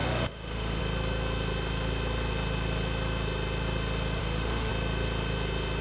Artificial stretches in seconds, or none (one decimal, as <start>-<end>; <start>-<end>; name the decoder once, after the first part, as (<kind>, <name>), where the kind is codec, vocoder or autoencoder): 0.0-0.8 (autoencoder, DAC-VAE); 4.2-4.7